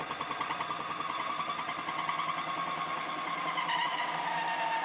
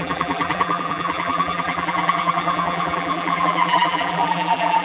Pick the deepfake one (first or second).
second